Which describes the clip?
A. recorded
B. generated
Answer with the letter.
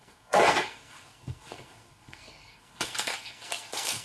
B